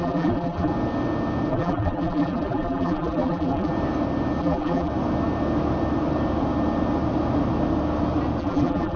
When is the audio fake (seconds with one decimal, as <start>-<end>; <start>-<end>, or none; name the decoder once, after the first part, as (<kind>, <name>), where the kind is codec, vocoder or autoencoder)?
0.0-0.7 (vocoder, BigVGAN v2); 1.5-3.7; 4.4-4.9; 8.4-9.0